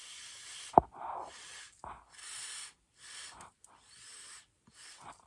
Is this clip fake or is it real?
real